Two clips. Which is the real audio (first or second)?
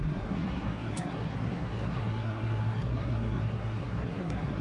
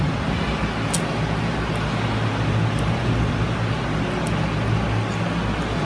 second